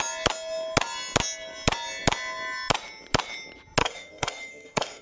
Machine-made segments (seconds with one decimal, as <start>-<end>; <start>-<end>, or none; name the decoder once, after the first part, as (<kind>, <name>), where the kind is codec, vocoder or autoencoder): 3.8-5.0 (codec, SNAC)